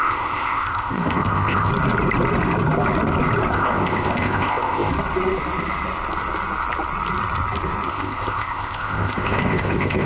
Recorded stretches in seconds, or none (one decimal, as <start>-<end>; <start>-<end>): 1.7-3.5; 4.9-7.9